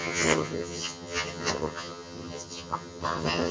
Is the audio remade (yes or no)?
yes